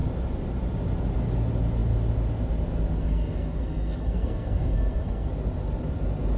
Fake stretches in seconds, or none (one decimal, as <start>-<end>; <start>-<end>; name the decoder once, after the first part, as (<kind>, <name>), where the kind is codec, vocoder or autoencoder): 3.0-5.3 (codec, SNAC)